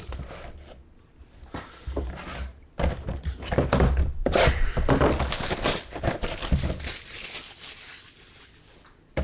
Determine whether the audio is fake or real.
real